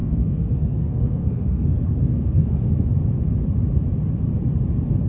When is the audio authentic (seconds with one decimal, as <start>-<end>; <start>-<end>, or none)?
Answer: 2.7-5.1